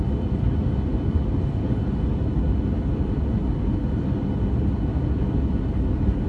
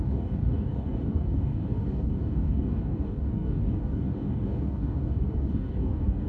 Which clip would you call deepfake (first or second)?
second